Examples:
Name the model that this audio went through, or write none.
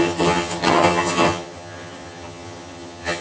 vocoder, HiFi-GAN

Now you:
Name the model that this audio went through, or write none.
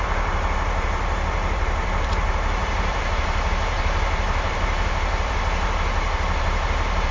vocoder, BigVGAN v2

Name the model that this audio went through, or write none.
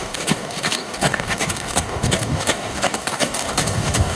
codec, DAC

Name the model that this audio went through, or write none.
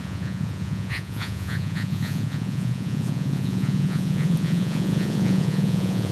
vocoder, Vocos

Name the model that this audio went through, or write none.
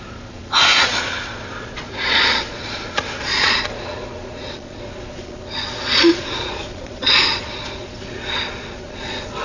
vocoder, Vocos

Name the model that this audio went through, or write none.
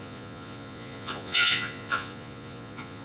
vocoder, Vocos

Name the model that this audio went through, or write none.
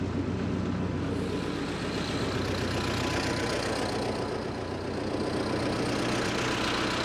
none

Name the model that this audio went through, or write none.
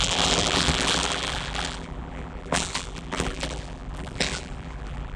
vocoder, BigVGAN v2